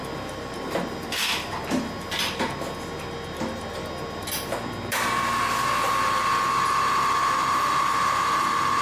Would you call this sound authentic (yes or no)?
yes